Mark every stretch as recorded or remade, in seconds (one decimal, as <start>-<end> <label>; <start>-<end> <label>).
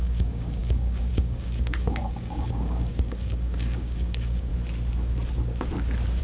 0.0-4.5 remade; 4.5-6.2 recorded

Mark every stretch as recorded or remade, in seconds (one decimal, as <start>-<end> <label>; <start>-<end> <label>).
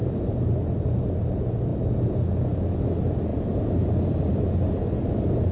0.0-5.5 recorded